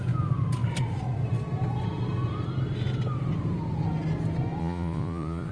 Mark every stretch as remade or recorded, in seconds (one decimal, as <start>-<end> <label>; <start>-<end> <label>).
0.0-4.6 recorded; 4.6-5.5 remade